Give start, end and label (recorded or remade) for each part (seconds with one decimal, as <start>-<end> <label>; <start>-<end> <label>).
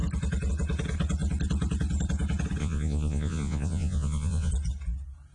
0.0-2.6 recorded; 2.6-4.5 remade; 4.5-5.3 recorded